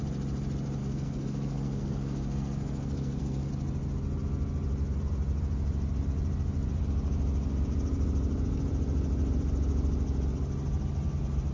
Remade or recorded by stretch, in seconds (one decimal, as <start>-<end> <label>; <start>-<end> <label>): 0.0-0.8 recorded; 0.8-3.5 remade; 3.5-11.5 recorded